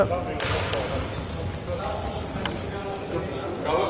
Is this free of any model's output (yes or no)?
yes